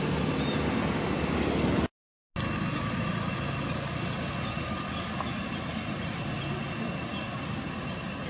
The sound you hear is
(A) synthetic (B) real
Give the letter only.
B